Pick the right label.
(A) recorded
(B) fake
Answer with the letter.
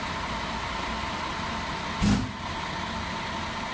A